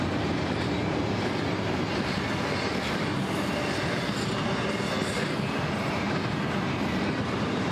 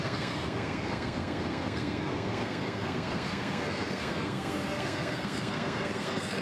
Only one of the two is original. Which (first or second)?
first